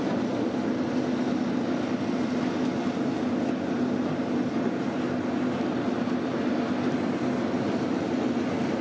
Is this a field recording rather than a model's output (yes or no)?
yes